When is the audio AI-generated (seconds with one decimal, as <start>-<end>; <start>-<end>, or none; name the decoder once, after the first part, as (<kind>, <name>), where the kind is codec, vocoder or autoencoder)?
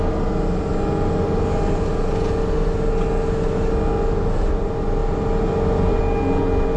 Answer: none